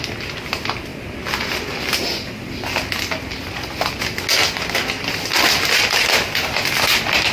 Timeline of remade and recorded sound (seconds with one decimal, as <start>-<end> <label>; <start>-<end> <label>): 0.0-7.3 recorded